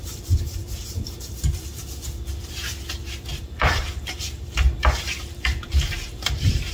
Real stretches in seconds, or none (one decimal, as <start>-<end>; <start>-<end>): 1.8-3.4